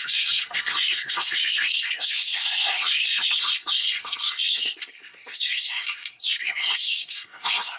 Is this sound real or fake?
fake